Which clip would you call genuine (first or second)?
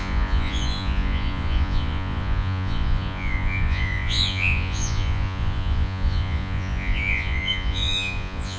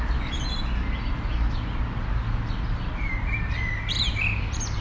second